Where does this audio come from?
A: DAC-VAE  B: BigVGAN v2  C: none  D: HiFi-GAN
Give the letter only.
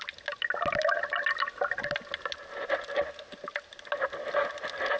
C